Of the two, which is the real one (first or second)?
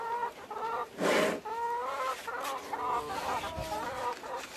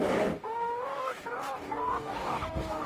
first